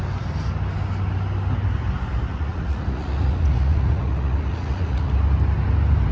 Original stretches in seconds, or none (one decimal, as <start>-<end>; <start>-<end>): 0.0-2.3; 5.1-6.1